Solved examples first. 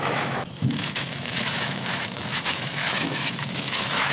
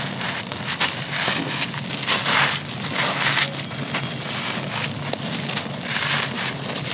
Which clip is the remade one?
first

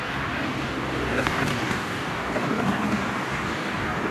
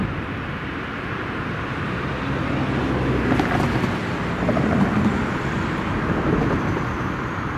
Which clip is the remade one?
first